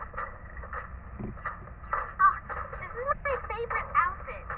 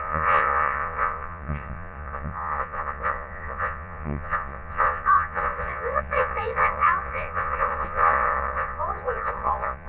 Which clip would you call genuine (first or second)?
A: first